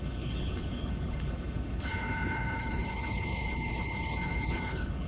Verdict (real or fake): fake